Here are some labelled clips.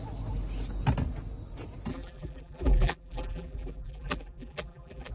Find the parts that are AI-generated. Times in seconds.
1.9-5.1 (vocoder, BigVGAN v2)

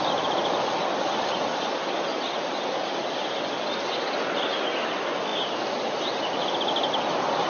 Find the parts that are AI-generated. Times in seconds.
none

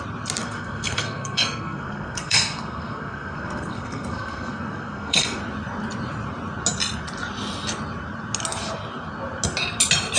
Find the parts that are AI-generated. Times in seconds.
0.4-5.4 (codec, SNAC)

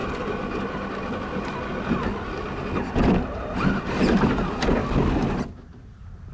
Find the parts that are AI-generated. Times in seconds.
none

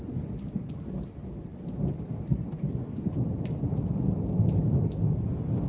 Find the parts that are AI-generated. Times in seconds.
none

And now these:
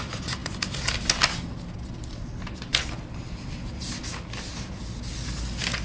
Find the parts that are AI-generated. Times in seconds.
none